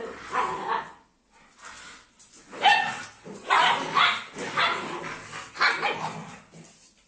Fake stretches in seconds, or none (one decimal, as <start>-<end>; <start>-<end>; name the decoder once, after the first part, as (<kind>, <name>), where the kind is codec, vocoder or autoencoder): none